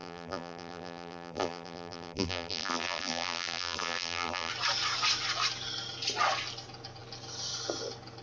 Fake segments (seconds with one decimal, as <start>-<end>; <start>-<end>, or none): 0.0-4.5

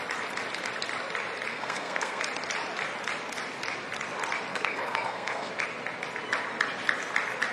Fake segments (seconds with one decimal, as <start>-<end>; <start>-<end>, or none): 1.5-2.2; 4.5-5.5